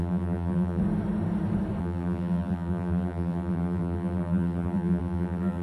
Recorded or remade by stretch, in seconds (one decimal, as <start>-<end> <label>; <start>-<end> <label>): 0.0-0.8 remade; 0.8-1.8 recorded; 1.8-5.6 remade